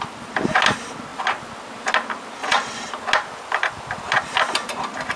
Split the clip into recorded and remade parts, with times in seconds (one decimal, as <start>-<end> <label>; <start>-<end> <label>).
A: 0.0-2.4 recorded; 2.4-2.9 remade; 2.9-5.2 recorded